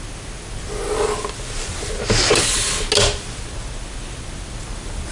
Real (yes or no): yes